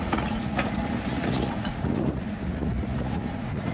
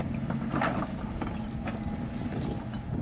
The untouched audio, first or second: second